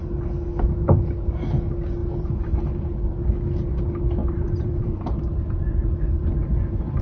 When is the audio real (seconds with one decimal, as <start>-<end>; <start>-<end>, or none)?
0.0-4.2; 6.4-7.0